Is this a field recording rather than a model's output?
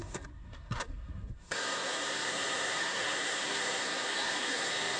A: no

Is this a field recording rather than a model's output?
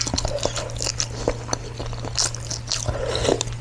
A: yes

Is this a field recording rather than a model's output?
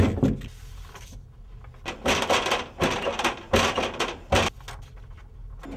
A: yes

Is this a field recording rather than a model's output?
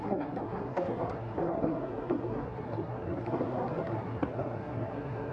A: no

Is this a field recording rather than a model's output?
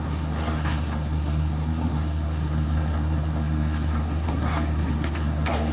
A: no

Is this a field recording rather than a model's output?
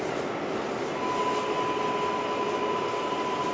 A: yes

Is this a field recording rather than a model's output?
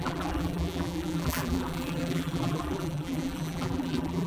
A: no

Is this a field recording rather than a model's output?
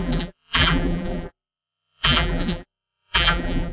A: no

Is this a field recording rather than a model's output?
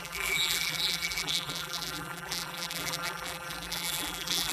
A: no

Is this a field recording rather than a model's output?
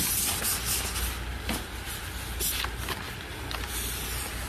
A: yes